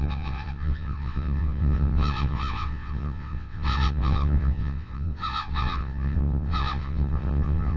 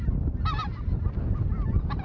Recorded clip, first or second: second